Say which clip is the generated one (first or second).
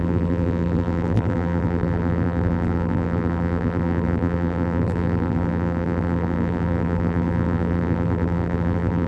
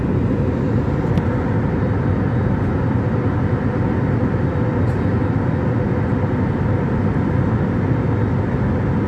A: first